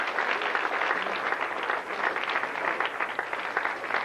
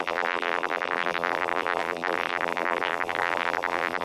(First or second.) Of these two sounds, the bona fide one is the first